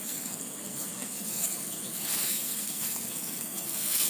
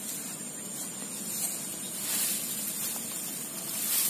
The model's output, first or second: first